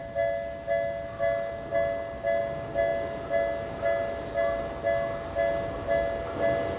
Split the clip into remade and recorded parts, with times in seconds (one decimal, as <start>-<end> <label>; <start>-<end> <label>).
0.0-6.8 recorded